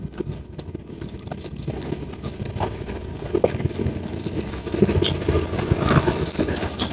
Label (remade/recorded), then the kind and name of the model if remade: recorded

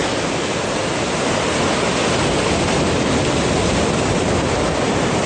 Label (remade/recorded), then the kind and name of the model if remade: recorded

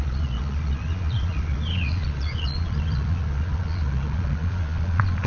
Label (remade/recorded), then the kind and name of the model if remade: remade, vocoder, Vocos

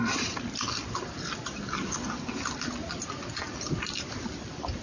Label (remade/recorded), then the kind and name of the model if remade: recorded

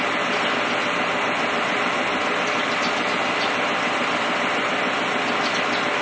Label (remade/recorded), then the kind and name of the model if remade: recorded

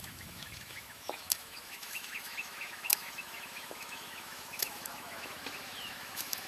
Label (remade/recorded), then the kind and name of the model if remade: remade, autoencoder, DAC-VAE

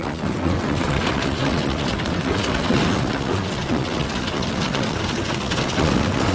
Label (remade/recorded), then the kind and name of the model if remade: remade, vocoder, WaveNeXt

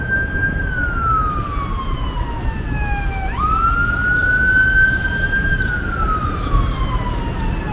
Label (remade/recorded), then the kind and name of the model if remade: recorded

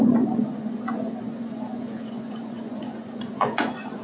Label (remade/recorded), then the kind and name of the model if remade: remade, vocoder, Vocos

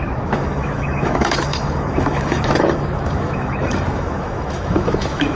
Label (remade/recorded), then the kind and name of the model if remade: remade, autoencoder, DAC-VAE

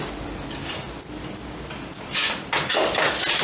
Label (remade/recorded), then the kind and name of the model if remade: recorded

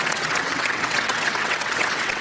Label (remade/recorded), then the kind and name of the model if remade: remade, vocoder, WaveNeXt